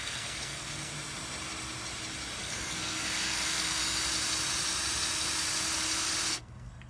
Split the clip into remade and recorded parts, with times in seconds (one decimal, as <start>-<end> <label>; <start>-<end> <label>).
0.0-0.9 remade; 0.9-2.4 recorded; 2.4-3.8 remade; 3.8-6.3 recorded; 6.3-6.9 remade